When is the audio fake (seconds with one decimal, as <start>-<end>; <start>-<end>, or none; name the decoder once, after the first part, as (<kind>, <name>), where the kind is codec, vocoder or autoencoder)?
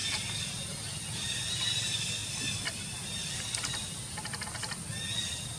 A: none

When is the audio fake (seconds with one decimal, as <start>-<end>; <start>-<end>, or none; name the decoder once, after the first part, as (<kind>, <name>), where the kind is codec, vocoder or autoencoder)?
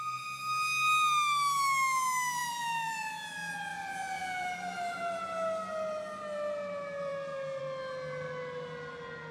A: 2.4-3.3 (vocoder, BigVGAN v2); 3.7-7.6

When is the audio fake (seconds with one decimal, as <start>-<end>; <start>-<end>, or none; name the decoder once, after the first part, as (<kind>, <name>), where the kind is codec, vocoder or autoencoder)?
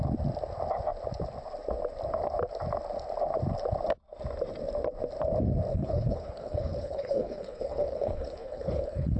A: 5.7-9.2 (codec, HILCodec)